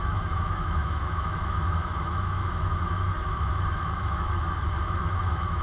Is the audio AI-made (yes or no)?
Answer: yes